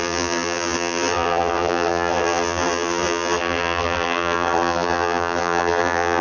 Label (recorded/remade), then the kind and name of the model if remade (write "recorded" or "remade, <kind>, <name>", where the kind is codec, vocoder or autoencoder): remade, vocoder, BigVGAN v2